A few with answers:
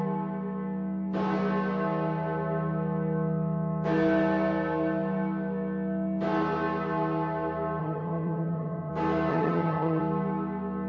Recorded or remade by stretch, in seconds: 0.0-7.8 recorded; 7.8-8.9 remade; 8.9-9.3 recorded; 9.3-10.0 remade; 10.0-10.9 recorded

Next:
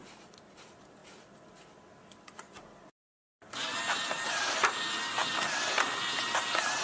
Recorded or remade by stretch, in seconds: 0.0-6.8 recorded

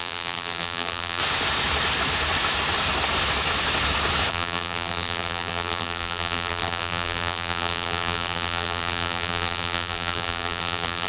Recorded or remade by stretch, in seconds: 0.0-1.2 remade; 1.2-4.3 recorded; 4.3-11.1 remade

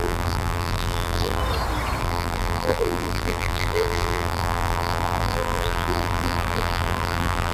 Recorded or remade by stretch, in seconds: 0.0-1.4 remade; 1.4-2.0 recorded; 2.0-7.5 remade